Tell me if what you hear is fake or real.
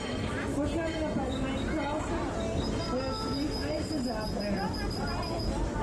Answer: real